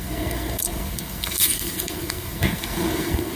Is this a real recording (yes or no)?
no